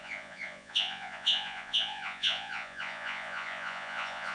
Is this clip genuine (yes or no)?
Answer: no